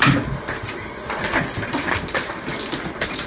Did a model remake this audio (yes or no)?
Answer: no